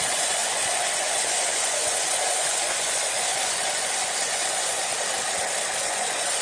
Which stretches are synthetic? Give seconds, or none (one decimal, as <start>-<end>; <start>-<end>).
0.0-4.9; 5.8-6.4